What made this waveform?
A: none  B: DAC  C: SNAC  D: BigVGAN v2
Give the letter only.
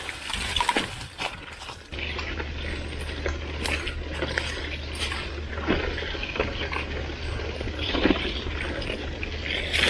A